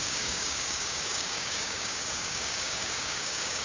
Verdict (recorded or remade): remade